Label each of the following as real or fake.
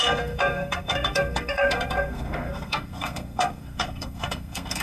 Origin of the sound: fake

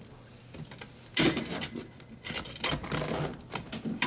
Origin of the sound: real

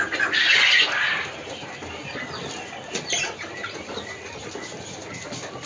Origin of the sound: real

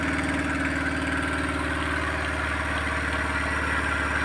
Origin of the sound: real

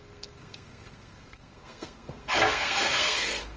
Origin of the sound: fake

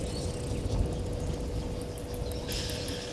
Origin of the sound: real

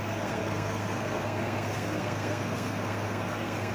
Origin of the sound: fake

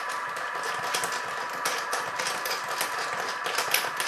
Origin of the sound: real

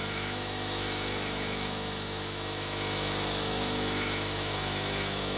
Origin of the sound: fake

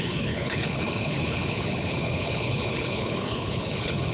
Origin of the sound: fake